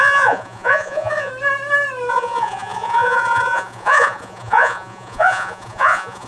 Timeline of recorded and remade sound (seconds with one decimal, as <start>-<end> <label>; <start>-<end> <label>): 0.0-1.3 remade; 1.3-2.1 recorded; 2.1-6.3 remade